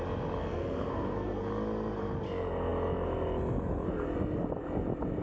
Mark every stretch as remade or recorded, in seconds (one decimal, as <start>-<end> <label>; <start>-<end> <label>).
0.0-0.4 recorded; 0.4-1.4 remade; 1.4-5.2 recorded